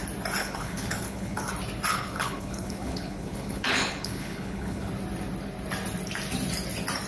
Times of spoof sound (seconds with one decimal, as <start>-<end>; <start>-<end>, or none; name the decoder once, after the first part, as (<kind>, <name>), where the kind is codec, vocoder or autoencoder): 0.4-1.5 (codec, HILCodec); 1.9-4.9